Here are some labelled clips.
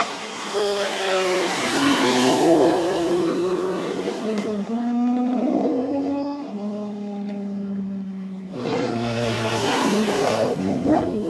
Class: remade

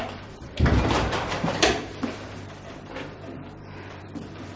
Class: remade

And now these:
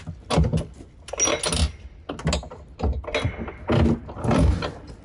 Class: recorded